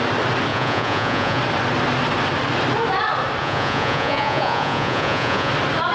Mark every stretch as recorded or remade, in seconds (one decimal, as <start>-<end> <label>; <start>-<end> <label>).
0.0-0.5 recorded; 0.5-1.4 remade; 1.4-3.4 recorded; 3.4-5.5 remade; 5.5-5.9 recorded